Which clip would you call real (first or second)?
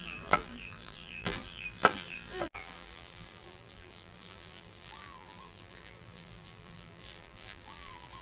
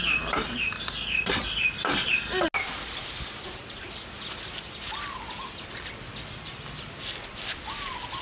second